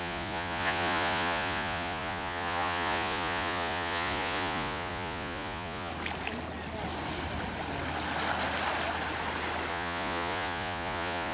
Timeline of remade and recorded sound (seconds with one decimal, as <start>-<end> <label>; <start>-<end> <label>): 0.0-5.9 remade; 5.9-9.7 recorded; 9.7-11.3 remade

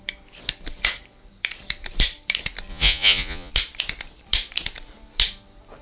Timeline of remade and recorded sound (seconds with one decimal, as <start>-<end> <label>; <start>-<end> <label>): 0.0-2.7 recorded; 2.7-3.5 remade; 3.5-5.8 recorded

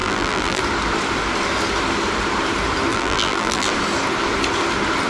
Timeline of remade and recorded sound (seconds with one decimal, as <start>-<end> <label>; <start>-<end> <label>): 0.0-0.6 remade; 0.6-2.9 recorded; 2.9-3.7 remade; 3.7-5.1 recorded

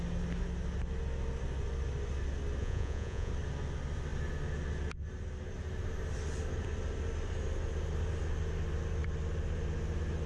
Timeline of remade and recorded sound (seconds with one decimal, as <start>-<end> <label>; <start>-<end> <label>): 0.0-2.6 recorded; 2.6-3.3 remade; 3.3-10.3 recorded